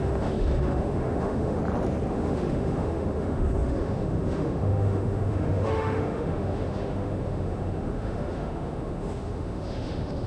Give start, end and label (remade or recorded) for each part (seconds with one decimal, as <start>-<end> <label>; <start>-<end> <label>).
0.0-1.6 remade; 1.6-2.1 recorded; 2.1-10.3 remade